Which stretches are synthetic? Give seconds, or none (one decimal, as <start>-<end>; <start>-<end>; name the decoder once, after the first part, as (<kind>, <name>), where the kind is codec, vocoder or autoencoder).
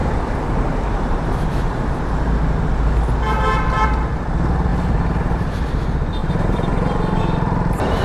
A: 0.0-2.1 (vocoder, BigVGAN v2); 4.7-5.6; 6.2-7.2